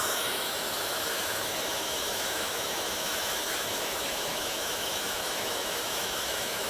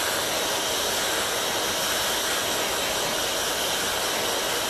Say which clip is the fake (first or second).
first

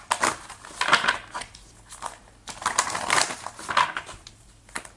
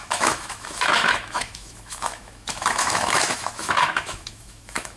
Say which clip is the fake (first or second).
second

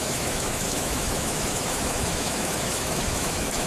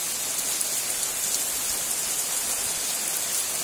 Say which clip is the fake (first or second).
first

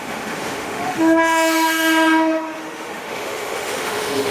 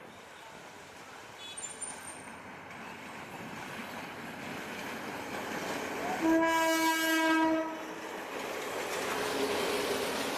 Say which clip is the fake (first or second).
first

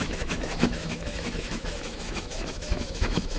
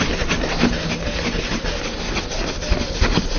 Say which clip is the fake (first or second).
first